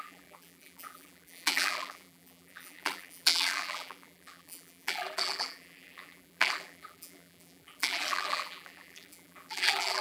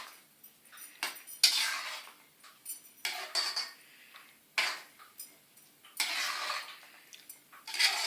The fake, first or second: first